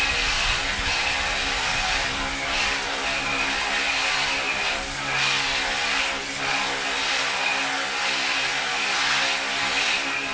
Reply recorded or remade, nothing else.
recorded